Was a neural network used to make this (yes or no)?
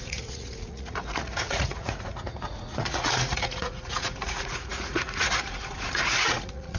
yes